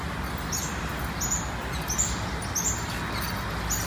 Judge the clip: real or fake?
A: real